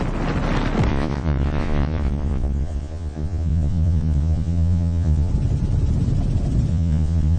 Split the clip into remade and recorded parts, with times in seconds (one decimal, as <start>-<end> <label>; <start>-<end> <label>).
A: 0.0-0.9 recorded; 0.9-5.3 remade; 5.3-6.7 recorded; 6.7-7.4 remade